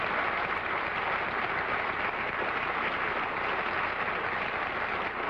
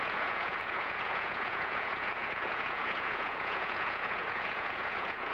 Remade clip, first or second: second